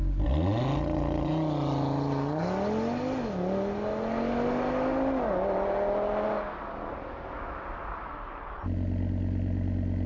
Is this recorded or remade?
recorded